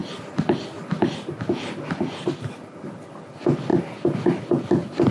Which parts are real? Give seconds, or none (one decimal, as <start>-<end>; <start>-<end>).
0.0-5.1